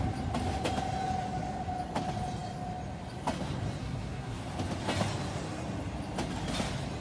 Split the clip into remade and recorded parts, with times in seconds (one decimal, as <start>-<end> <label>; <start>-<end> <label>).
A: 0.0-3.8 recorded; 3.8-4.4 remade; 4.4-7.0 recorded